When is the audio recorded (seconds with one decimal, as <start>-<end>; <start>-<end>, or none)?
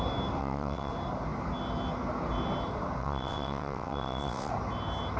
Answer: 0.0-0.4; 0.9-3.0; 4.5-5.2